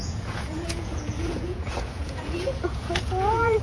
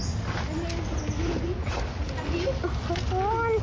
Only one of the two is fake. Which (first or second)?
first